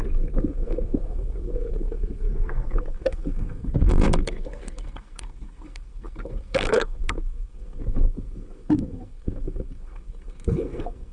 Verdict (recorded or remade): remade